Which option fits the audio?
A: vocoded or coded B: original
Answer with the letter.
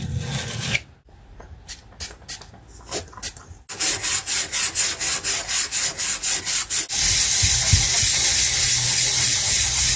B